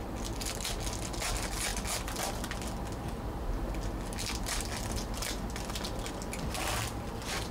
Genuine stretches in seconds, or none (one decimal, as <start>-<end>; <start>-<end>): 0.0-7.5